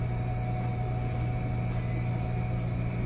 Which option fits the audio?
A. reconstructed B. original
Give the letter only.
B